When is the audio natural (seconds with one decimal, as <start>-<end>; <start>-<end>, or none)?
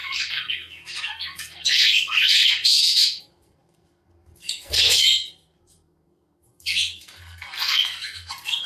none